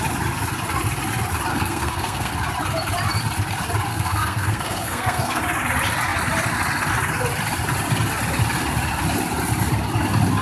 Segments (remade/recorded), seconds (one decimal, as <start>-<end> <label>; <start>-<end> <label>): 0.0-1.5 recorded; 1.5-2.3 remade; 2.3-3.9 recorded; 3.9-5.4 remade; 5.4-10.4 recorded